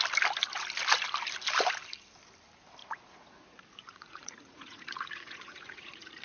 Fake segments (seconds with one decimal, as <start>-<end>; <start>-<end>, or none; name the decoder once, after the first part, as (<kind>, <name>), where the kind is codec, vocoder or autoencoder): 2.8-6.2 (vocoder, Vocos)